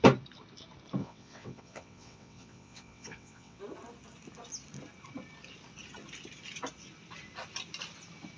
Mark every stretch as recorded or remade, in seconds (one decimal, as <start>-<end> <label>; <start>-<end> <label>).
0.0-1.0 recorded; 1.0-3.6 remade; 3.6-8.4 recorded